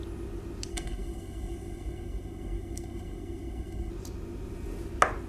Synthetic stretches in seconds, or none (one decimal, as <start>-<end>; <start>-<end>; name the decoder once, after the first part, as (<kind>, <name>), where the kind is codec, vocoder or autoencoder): 0.7-3.9 (codec, SNAC)

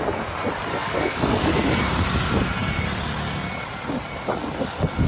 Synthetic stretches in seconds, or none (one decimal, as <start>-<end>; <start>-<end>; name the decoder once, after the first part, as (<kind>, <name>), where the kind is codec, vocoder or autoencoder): 0.7-1.4 (codec, SNAC)

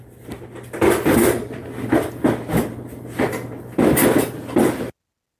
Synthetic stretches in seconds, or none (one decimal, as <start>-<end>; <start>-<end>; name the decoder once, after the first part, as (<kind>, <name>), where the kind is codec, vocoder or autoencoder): none

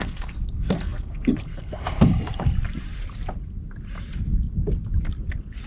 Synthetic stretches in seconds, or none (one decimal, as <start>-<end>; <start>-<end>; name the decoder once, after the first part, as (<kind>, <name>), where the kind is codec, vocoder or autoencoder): 0.0-2.1 (codec, SNAC)

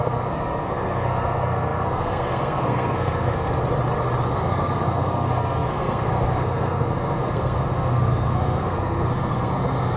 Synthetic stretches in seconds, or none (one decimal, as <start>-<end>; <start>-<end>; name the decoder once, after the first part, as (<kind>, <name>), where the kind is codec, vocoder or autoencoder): 0.0-3.6 (codec, SNAC); 4.3-10.0